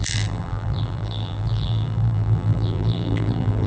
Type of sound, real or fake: fake